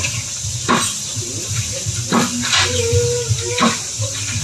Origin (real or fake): real